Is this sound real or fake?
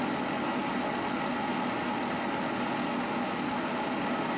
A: real